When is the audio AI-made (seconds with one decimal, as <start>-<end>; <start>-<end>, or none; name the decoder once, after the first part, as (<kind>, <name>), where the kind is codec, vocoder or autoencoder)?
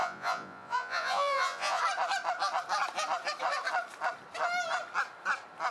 0.0-1.8 (vocoder, Vocos)